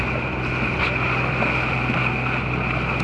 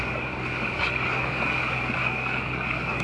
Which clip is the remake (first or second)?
second